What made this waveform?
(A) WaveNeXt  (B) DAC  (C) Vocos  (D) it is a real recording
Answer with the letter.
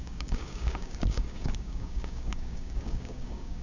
B